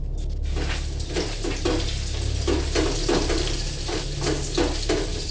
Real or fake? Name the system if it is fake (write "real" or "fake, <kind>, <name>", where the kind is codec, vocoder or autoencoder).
real